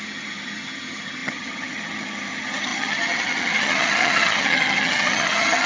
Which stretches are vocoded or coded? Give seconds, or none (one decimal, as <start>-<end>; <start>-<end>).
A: 0.0-5.7